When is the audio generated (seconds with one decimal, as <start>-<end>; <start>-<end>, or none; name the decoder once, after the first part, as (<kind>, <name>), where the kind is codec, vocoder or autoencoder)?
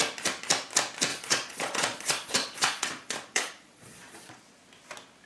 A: 1.1-4.3 (vocoder, Vocos)